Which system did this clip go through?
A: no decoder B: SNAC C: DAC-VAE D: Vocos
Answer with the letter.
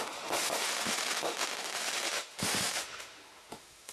C